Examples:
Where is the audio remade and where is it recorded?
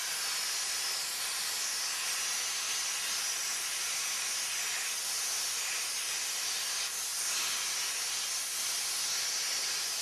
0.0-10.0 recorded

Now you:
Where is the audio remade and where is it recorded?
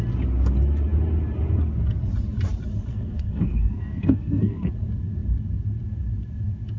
0.0-2.9 recorded; 2.9-4.7 remade; 4.7-6.8 recorded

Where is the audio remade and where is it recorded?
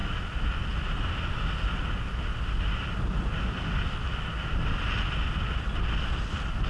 0.0-6.7 recorded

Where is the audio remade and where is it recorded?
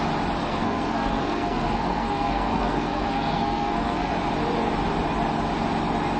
0.0-0.4 recorded; 0.4-4.1 remade; 4.1-6.2 recorded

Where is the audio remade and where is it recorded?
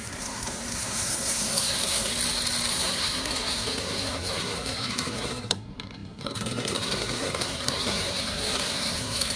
0.0-2.1 remade; 2.1-2.7 recorded; 2.7-9.4 remade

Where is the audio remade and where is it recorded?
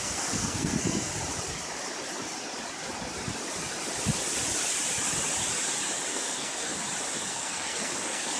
0.0-1.1 remade; 1.1-6.1 recorded; 6.1-6.7 remade; 6.7-7.3 recorded; 7.3-8.4 remade